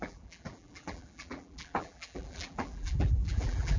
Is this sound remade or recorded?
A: remade